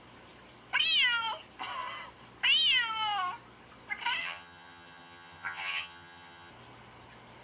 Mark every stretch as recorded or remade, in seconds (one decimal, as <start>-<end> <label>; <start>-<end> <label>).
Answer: 0.0-4.2 recorded; 4.2-6.5 remade; 6.5-7.4 recorded